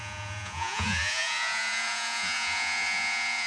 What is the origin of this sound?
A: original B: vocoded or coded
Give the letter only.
B